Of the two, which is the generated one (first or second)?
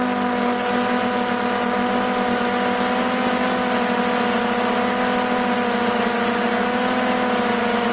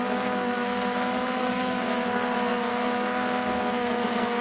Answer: second